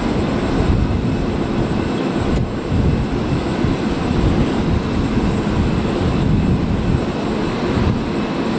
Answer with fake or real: real